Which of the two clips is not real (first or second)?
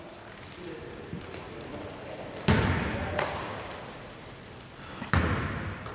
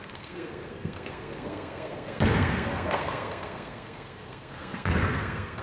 second